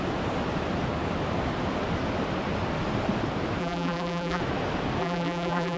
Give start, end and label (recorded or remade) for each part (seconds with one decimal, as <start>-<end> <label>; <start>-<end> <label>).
0.0-3.6 recorded; 3.6-4.4 remade; 4.4-5.0 recorded; 5.0-5.8 remade